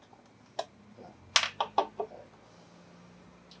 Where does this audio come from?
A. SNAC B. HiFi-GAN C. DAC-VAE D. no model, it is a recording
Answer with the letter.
D